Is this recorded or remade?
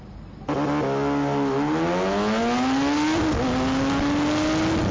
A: recorded